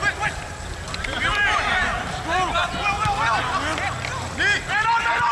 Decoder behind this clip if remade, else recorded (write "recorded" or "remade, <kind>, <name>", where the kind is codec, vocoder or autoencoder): recorded